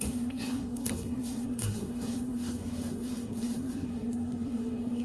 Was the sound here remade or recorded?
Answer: remade